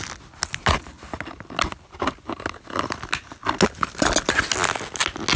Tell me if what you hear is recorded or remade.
recorded